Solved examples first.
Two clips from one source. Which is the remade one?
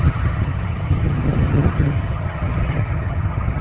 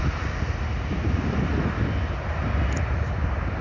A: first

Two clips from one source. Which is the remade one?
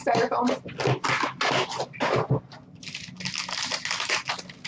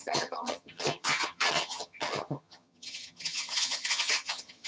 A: second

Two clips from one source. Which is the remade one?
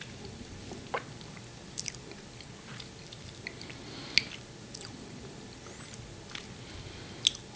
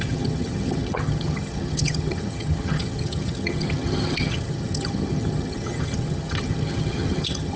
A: second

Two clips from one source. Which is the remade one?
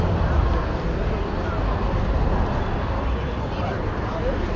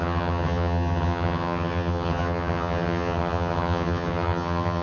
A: second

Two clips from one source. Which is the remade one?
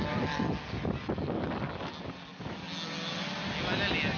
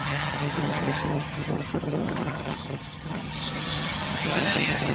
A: second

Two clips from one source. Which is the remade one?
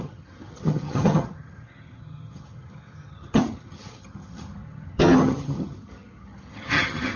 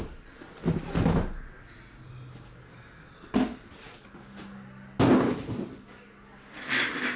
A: first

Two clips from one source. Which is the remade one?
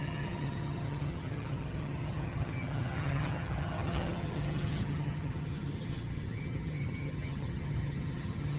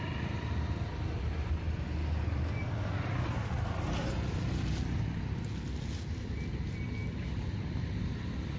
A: first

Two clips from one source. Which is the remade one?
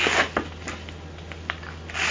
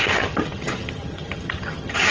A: second